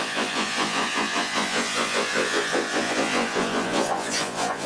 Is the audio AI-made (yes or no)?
yes